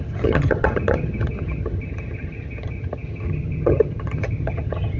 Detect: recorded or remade remade